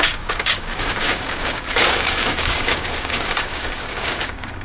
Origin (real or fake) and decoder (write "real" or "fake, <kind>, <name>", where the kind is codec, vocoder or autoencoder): fake, codec, DAC